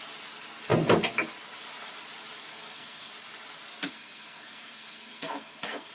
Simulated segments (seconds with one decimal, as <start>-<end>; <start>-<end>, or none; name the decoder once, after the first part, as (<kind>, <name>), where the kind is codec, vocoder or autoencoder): 2.5-3.1 (codec, SNAC); 3.7-5.9